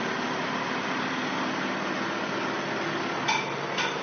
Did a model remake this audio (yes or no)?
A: no